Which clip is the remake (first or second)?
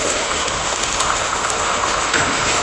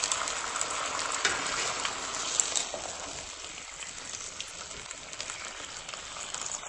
first